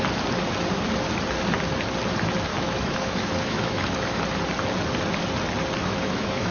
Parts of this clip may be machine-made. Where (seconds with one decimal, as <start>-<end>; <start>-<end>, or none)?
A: 2.5-4.2; 5.8-6.5